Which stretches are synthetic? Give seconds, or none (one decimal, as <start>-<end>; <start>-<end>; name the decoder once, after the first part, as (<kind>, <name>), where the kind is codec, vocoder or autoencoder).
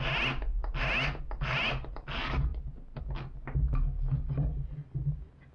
none